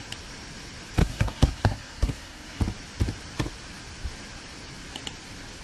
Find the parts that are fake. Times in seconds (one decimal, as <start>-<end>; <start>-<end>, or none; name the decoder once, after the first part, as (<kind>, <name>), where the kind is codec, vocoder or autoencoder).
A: 1.0-2.6 (codec, SNAC)